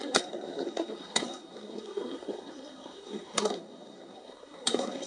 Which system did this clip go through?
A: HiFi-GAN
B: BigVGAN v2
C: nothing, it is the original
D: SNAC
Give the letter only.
D